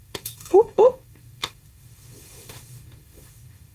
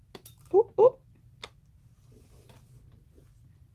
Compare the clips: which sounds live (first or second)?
second